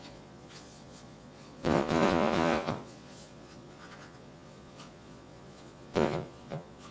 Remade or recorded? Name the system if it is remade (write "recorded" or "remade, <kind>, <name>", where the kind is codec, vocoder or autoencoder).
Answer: remade, vocoder, Vocos